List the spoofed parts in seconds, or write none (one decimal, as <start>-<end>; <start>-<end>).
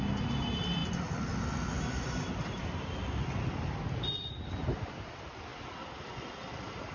none